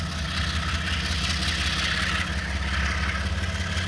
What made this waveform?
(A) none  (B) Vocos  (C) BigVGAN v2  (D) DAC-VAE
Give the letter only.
A